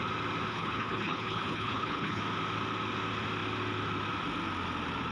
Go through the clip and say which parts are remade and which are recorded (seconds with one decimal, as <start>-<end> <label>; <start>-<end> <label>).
0.0-0.5 recorded; 0.5-2.2 remade; 2.2-5.1 recorded

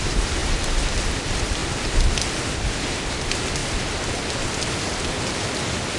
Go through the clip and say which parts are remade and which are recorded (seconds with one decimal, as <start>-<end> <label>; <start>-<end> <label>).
0.0-3.6 remade; 3.6-5.3 recorded; 5.3-6.0 remade

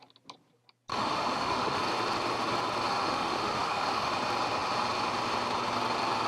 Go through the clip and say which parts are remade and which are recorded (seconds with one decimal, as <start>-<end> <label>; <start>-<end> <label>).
0.0-0.9 recorded; 0.9-1.8 remade; 1.8-3.0 recorded; 3.0-4.1 remade; 4.1-6.3 recorded

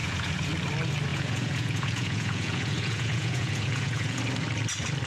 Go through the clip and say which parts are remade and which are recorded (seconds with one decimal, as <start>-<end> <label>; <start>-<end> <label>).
0.0-0.5 remade; 0.5-1.1 recorded; 1.1-4.2 remade; 4.2-5.1 recorded

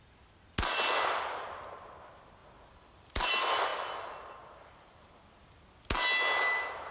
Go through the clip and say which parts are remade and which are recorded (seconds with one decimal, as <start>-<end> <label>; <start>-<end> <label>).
0.0-2.4 recorded; 2.4-3.3 remade; 3.3-6.9 recorded

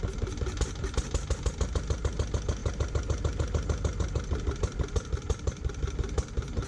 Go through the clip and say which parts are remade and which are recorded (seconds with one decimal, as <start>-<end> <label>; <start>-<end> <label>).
0.0-6.7 recorded

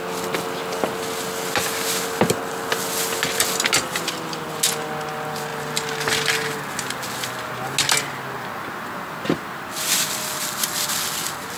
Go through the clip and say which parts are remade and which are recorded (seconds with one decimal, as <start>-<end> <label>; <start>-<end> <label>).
0.0-11.6 recorded

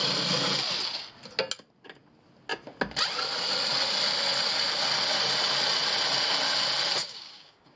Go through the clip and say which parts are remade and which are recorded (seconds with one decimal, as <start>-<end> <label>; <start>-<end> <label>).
0.0-7.0 recorded; 7.0-7.8 remade